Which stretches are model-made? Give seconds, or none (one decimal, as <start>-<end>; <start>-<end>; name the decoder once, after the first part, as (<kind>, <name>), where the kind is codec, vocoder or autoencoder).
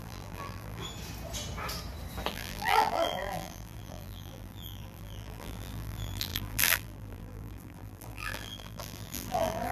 0.0-0.8 (vocoder, BigVGAN v2); 2.3-9.7